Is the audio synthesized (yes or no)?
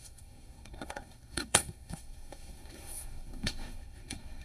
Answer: yes